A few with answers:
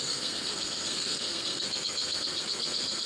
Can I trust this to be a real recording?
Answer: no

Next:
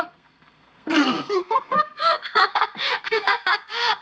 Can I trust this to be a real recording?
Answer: no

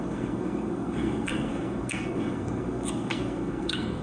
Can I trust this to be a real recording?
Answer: no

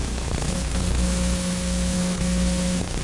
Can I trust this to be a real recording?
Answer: no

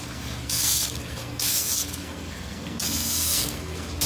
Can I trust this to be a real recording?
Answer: no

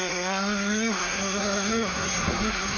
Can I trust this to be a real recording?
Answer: no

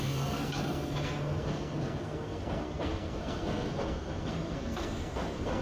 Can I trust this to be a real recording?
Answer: no